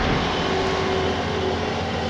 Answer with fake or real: real